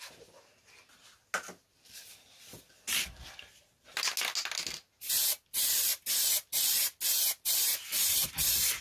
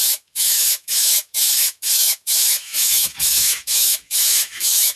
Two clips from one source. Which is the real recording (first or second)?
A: first